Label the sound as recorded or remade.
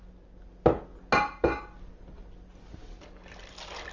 recorded